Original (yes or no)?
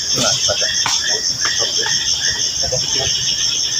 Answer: yes